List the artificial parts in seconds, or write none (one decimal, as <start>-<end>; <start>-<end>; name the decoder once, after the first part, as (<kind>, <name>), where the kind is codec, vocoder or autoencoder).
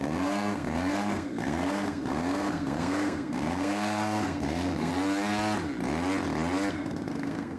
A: 0.0-4.9 (codec, SNAC); 6.7-7.6